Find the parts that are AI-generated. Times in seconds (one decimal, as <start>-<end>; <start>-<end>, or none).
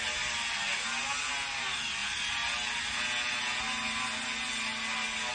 none